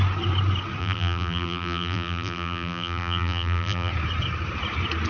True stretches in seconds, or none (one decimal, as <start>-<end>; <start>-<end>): 0.0-0.8; 3.9-5.1